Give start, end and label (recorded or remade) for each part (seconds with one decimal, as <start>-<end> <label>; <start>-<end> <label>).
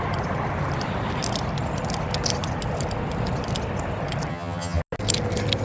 0.0-4.3 recorded; 4.3-4.8 remade; 4.8-5.6 recorded